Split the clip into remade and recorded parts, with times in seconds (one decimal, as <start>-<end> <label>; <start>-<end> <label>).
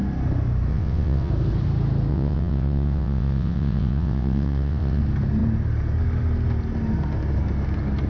0.0-0.7 recorded; 0.7-1.3 remade; 1.3-2.1 recorded; 2.1-5.0 remade; 5.0-8.1 recorded